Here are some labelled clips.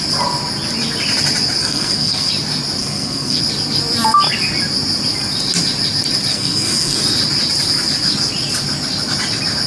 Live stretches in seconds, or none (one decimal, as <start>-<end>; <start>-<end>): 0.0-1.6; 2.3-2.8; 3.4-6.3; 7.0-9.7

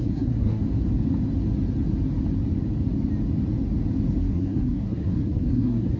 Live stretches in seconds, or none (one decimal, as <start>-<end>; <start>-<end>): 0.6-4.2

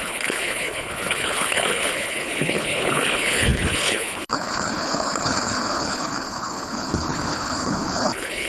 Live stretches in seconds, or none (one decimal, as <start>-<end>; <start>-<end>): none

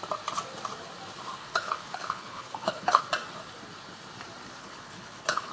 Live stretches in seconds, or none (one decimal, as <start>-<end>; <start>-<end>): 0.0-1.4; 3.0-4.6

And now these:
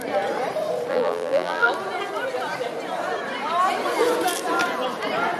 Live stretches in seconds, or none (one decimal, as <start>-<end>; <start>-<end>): 0.0-0.9; 1.7-5.4

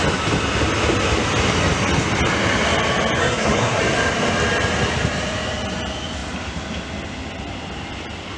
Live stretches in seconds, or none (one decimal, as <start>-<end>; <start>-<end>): 0.0-3.2; 3.8-8.4